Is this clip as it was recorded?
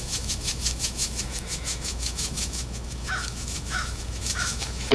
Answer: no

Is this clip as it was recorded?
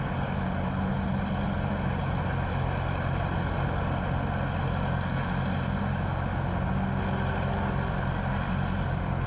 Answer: yes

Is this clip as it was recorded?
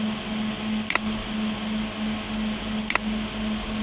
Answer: yes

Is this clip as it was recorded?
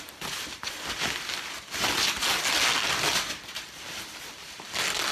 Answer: yes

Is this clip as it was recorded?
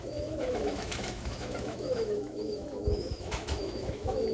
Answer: no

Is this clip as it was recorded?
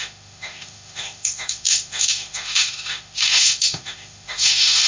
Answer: no